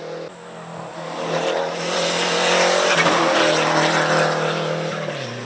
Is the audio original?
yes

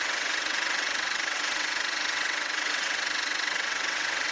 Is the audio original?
no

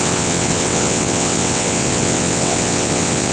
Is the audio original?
no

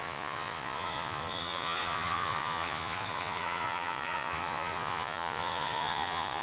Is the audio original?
no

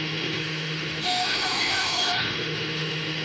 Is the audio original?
no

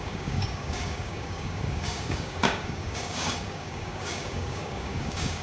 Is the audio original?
no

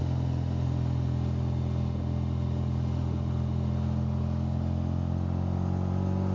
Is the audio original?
yes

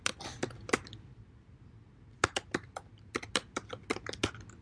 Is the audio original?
yes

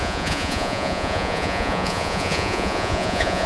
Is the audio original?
no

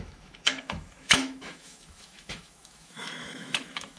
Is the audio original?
no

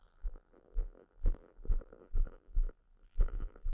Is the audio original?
no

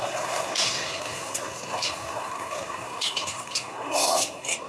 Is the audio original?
no